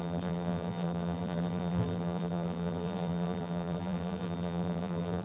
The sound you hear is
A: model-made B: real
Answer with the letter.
A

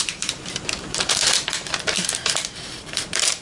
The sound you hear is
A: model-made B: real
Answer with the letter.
A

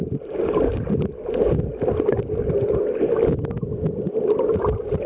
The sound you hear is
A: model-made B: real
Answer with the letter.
B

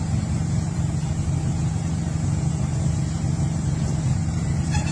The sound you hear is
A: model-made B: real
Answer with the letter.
A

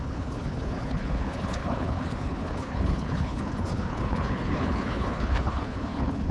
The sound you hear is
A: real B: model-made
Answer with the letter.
B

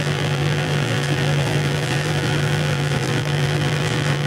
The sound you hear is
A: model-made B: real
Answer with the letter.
A